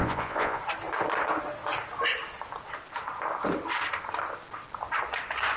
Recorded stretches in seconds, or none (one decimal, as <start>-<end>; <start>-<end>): 0.6-5.6